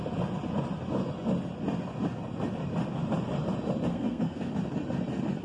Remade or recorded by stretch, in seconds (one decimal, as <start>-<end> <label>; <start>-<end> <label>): 0.0-3.9 recorded; 3.9-4.5 remade; 4.5-5.4 recorded